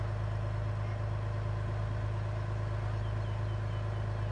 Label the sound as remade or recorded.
recorded